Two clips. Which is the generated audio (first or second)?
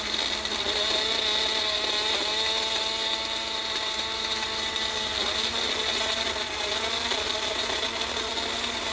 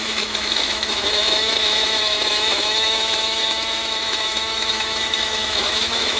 second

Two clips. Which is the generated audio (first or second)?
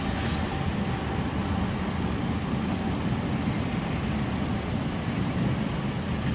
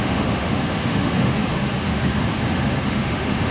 second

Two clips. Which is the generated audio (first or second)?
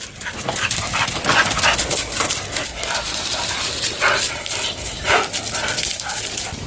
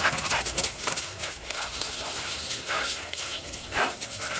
second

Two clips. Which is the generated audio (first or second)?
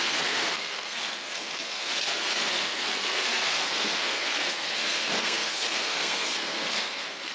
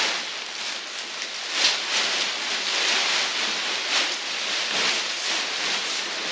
first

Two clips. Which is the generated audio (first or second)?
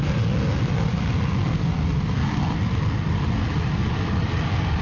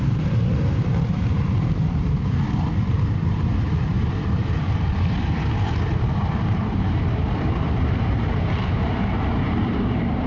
second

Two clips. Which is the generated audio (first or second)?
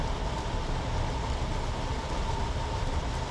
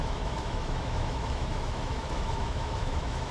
second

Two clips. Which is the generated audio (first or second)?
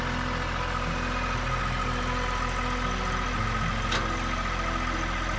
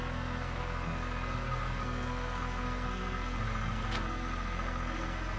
second